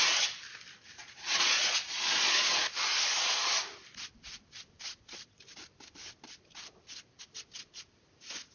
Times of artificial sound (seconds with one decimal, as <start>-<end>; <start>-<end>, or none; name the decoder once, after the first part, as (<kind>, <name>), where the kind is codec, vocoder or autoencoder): 1.0-2.5 (vocoder, Vocos); 4.9-5.4